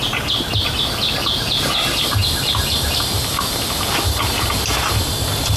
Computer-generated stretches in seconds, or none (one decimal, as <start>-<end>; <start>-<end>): none